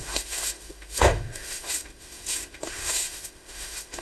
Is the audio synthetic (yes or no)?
yes